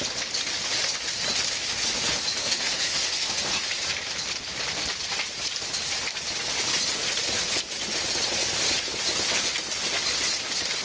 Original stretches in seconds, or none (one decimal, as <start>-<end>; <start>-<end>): 0.0-2.4; 3.3-10.8

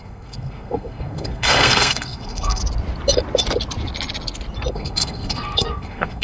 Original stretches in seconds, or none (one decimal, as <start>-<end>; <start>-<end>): 2.6-4.7

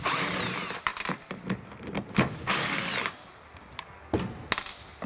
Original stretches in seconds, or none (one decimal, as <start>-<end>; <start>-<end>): 0.0-5.1

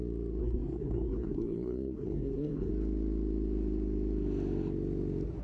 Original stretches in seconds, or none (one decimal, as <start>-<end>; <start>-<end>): 0.0-0.4; 2.7-5.4